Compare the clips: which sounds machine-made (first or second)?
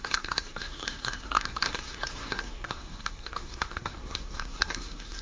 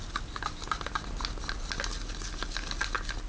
first